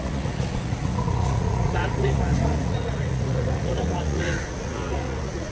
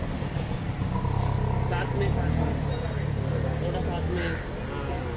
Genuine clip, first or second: second